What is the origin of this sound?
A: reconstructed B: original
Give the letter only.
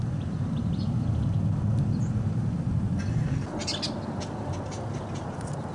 B